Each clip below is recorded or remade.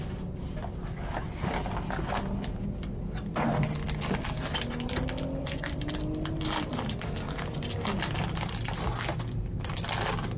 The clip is recorded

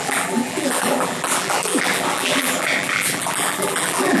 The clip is remade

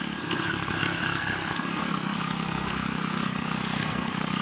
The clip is remade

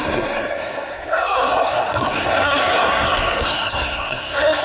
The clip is remade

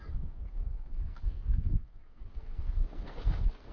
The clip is remade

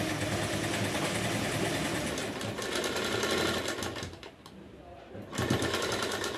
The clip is recorded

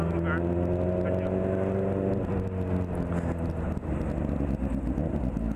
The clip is recorded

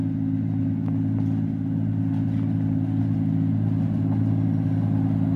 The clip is recorded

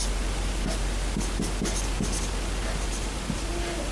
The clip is recorded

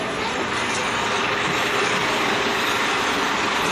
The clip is recorded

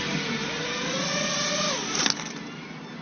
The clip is recorded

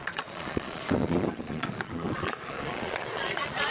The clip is remade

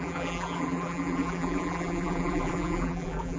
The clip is remade